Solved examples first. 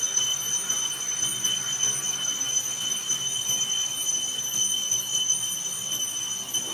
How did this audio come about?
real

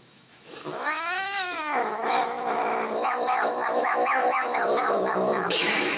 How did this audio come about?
fake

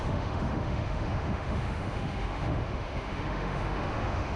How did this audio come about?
fake